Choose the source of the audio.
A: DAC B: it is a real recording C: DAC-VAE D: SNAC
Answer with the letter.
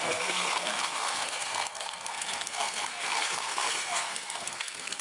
D